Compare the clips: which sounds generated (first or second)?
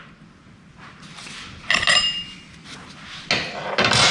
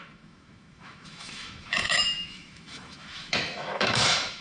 second